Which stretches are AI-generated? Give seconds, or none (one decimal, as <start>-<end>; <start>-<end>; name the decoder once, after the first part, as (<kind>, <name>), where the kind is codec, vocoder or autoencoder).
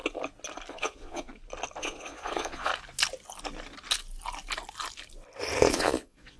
0.7-1.3 (vocoder, Vocos); 1.8-2.7; 5.7-6.4